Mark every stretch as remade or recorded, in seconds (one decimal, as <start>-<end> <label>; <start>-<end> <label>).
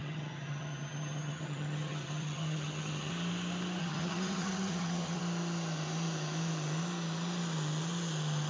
0.0-3.1 remade; 3.1-3.8 recorded; 3.8-5.2 remade; 5.2-8.5 recorded